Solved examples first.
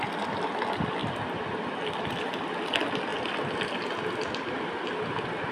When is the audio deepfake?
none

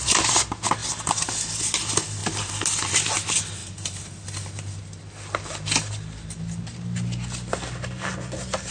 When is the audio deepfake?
0.8-1.5 (vocoder, BigVGAN v2); 3.6-6.6

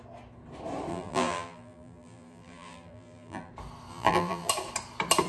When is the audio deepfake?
0.9-3.5 (vocoder, BigVGAN v2); 3.9-4.5

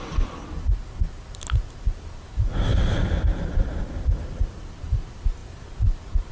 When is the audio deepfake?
2.7-4.8 (vocoder, BigVGAN v2)

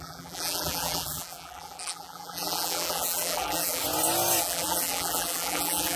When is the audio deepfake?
0.0-3.8 (vocoder, BigVGAN v2); 4.4-6.0

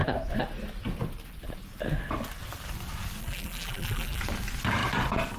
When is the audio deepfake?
3.2-4.2 (vocoder, BigVGAN v2)

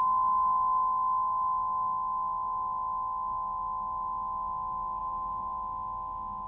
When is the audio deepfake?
5.0-5.5 (vocoder, BigVGAN v2)